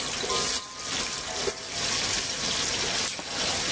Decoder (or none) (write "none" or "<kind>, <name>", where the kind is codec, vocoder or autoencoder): none